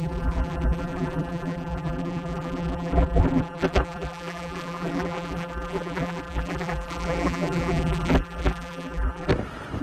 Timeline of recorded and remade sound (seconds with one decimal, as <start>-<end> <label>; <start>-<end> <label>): 0.0-9.3 remade; 9.3-9.8 recorded